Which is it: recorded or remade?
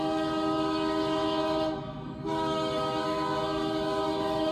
remade